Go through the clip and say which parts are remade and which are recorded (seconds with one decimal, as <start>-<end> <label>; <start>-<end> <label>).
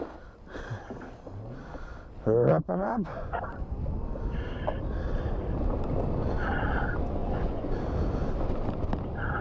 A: 0.0-2.5 recorded; 2.5-3.3 remade; 3.3-7.2 recorded; 7.2-7.7 remade; 7.7-9.4 recorded